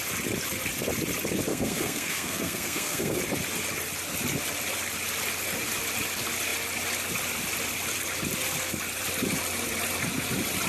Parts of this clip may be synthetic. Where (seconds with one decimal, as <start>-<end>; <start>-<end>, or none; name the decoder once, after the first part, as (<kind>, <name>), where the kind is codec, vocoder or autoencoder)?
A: 1.5-3.2 (codec, SNAC)